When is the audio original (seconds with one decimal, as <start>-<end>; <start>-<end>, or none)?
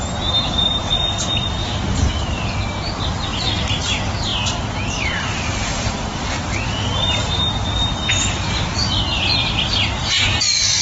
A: 0.0-1.6; 2.6-4.3; 6.3-10.8